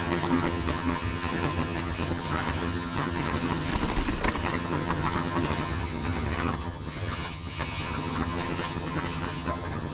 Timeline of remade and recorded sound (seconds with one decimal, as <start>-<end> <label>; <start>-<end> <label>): 0.0-3.7 remade; 3.7-4.4 recorded; 4.4-9.9 remade